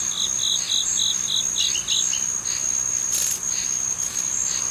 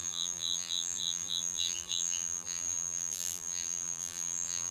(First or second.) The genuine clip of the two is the first